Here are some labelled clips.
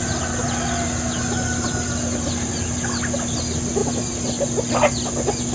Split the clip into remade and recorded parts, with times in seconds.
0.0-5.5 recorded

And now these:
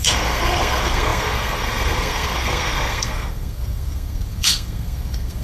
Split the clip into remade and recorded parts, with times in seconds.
0.0-5.4 remade

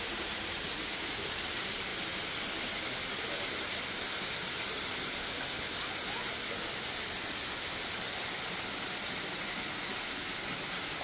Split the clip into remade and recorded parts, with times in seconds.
0.0-11.0 recorded